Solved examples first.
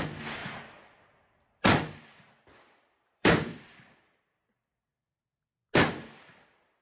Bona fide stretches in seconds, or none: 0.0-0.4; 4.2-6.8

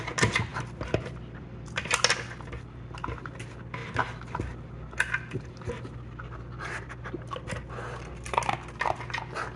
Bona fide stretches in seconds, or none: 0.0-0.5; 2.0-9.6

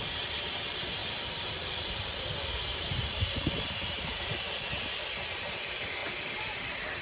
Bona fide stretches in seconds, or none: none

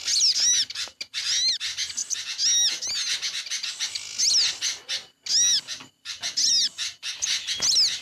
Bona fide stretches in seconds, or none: 0.0-8.0